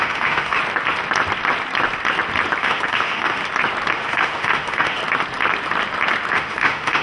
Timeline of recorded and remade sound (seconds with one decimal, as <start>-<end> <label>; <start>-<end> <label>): 0.0-0.6 remade; 0.6-2.6 recorded; 2.6-3.4 remade; 3.4-3.9 recorded; 3.9-5.0 remade; 5.0-6.3 recorded; 6.3-7.0 remade